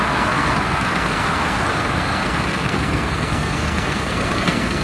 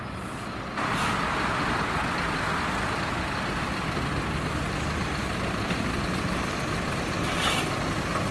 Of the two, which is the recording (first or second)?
second